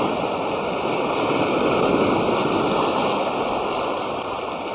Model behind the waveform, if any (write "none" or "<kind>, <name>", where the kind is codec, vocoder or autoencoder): none